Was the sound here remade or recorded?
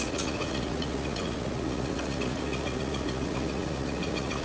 remade